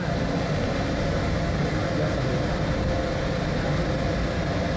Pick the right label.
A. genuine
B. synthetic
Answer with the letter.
A